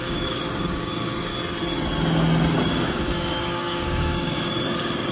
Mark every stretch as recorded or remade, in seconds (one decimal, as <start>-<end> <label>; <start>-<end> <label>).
0.0-1.3 remade; 1.3-2.7 recorded; 2.7-5.1 remade